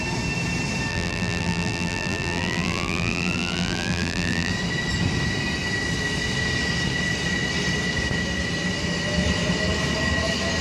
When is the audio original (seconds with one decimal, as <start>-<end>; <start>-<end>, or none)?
0.0-0.9; 4.5-10.6